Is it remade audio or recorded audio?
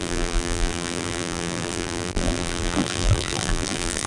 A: remade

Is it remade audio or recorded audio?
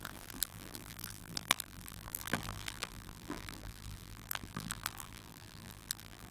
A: remade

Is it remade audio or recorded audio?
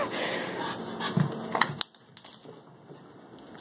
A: recorded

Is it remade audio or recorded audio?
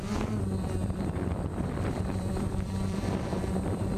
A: remade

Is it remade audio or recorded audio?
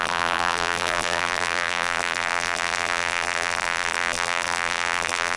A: remade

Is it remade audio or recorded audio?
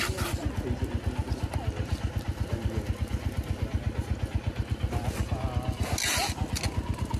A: recorded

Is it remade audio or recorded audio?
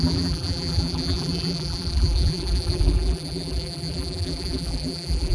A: remade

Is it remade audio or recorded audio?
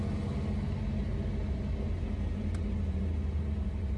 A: recorded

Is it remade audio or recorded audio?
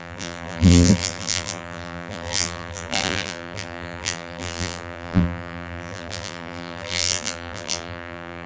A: remade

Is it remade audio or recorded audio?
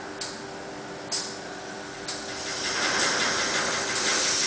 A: recorded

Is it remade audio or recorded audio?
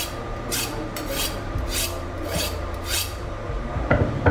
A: remade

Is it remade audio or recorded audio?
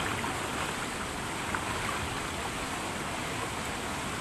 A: recorded